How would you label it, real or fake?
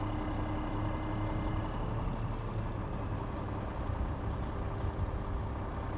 real